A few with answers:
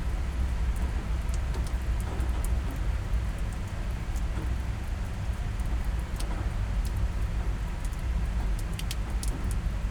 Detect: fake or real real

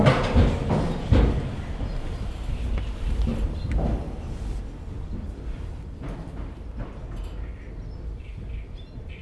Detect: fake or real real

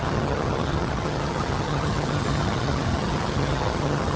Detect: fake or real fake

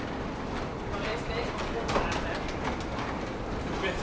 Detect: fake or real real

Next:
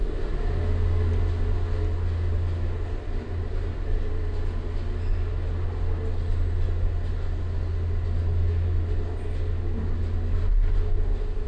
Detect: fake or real real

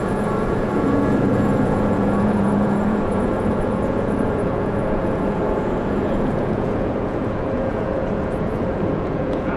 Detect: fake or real fake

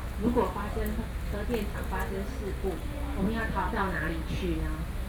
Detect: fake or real real